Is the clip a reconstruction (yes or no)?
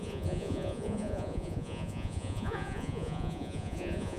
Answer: yes